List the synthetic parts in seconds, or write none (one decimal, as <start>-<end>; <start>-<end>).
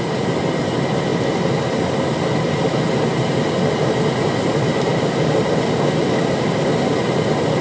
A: none